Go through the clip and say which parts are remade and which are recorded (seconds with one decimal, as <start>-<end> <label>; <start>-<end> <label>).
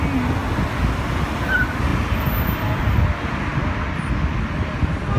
0.0-5.2 recorded